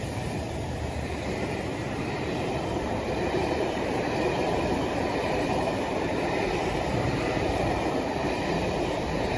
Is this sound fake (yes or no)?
yes